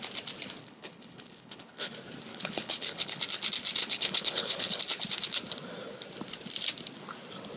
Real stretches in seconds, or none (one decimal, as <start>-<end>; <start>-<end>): 0.0-0.6; 1.9-2.3; 3.2-3.8; 4.8-7.6